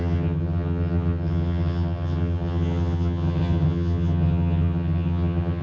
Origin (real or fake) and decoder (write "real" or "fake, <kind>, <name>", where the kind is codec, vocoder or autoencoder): fake, vocoder, HiFi-GAN